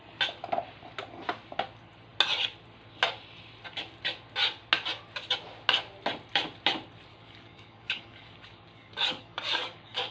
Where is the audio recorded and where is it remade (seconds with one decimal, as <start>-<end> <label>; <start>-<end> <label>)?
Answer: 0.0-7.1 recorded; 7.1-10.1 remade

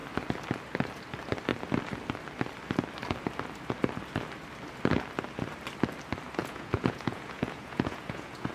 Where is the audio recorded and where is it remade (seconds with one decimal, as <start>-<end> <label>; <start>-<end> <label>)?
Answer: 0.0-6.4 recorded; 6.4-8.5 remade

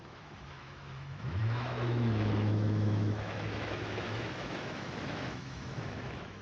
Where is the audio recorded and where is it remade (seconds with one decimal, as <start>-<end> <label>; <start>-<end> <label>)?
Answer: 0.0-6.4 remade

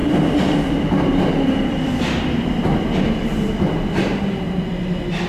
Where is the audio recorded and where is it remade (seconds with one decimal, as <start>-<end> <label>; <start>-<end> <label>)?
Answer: 0.0-5.3 recorded

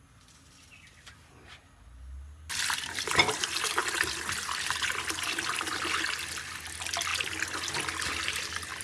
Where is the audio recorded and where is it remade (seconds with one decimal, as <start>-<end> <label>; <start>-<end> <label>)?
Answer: 0.0-8.8 recorded

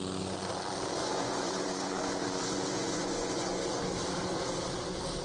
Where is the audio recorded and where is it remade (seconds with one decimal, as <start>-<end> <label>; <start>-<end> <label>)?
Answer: 0.0-1.0 recorded; 1.0-3.8 remade; 3.8-5.2 recorded

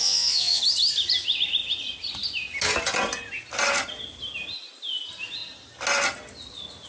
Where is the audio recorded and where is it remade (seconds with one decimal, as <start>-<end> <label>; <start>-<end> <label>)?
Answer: 0.0-0.6 remade; 0.6-6.9 recorded

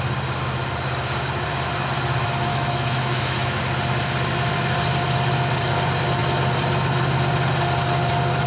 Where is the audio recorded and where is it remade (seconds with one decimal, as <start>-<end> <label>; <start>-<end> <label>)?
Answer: 0.0-2.5 recorded; 2.5-3.6 remade; 3.6-8.5 recorded